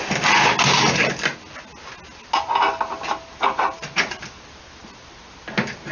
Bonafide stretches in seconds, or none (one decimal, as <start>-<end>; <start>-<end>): 0.0-5.9

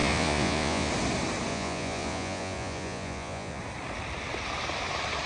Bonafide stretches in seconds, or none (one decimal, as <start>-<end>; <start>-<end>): 0.9-1.5; 3.6-5.3

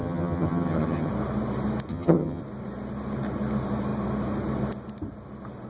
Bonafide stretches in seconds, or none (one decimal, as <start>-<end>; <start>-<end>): 1.1-1.9; 2.4-5.7

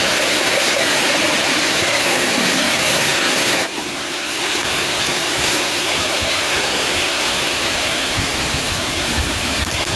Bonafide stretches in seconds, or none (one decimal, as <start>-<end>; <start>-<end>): 1.1-1.6

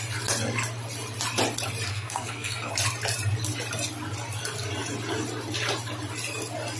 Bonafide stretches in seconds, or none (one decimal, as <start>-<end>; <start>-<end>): 0.0-1.9; 2.7-6.8